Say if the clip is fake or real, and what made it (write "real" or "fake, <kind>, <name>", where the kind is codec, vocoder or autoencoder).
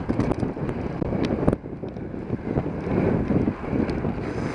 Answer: real